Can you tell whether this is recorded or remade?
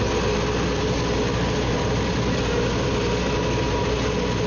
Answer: recorded